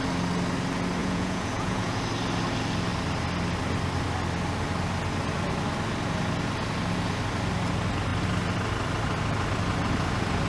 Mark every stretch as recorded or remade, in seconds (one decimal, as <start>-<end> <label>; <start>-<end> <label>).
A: 0.0-1.0 recorded; 1.0-2.0 remade; 2.0-10.5 recorded